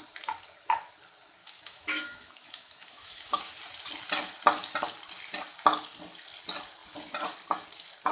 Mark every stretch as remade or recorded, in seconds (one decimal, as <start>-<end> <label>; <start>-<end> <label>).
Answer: 0.0-1.4 recorded; 1.4-3.5 remade; 3.5-8.1 recorded

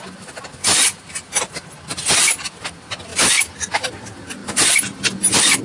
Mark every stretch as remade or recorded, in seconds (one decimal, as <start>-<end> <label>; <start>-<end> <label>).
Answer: 0.0-5.6 recorded

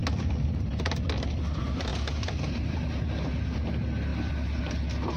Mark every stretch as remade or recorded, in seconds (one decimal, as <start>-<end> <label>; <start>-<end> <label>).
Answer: 0.0-5.2 recorded

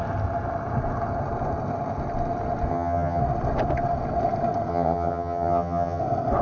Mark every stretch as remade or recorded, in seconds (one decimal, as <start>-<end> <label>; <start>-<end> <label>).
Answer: 0.0-2.7 recorded; 2.7-3.2 remade; 3.2-4.7 recorded; 4.7-6.0 remade; 6.0-6.4 recorded

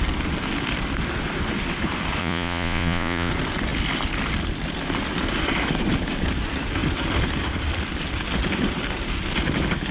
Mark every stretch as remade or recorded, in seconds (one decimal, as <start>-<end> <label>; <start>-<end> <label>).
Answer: 0.0-2.2 recorded; 2.2-3.3 remade; 3.3-9.9 recorded

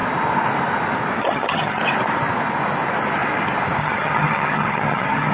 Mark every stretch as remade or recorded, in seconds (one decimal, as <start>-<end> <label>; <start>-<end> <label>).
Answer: 0.0-1.2 recorded; 1.2-1.8 remade; 1.8-3.8 recorded; 3.8-5.3 remade